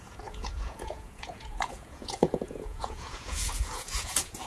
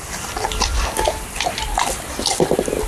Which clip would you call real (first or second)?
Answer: second